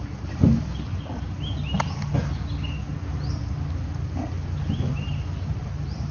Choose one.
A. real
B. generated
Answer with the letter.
A